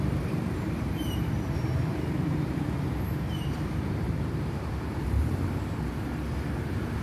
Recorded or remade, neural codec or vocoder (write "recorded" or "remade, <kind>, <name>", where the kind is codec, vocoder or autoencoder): remade, vocoder, BigVGAN v2